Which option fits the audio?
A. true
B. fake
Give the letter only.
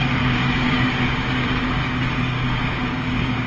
B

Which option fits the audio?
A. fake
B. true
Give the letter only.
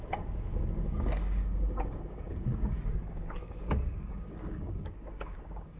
A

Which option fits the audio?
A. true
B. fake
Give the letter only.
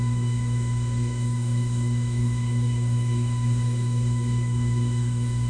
B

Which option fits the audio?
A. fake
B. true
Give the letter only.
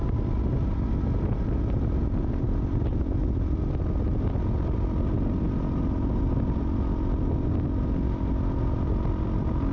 B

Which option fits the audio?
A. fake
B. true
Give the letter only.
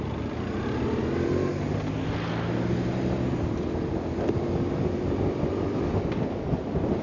B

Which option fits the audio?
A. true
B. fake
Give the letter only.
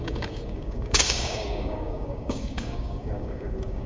B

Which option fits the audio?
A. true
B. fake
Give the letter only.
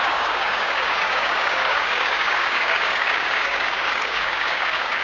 B